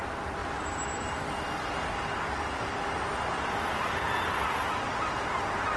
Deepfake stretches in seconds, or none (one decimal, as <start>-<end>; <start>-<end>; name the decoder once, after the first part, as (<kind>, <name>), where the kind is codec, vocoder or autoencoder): none

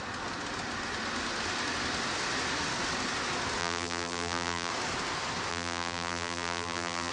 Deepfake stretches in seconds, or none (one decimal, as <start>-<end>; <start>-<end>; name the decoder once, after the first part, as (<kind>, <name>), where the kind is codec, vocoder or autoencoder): 3.6-4.7 (vocoder, BigVGAN v2); 5.5-7.1

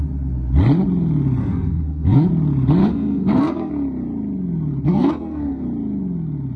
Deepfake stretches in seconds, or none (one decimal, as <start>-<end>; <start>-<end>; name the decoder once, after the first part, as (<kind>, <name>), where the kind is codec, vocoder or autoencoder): 1.4-2.3 (codec, SNAC); 2.8-3.7; 4.9-5.6